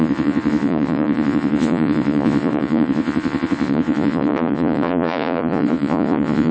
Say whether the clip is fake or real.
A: fake